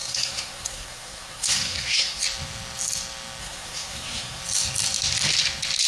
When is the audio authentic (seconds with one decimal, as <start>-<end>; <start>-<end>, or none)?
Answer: 2.2-3.4; 4.4-5.9